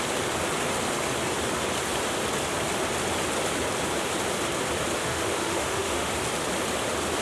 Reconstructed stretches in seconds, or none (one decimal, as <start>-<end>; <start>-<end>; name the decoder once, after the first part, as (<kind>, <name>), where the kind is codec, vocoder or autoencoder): 5.0-6.1 (autoencoder, DAC-VAE)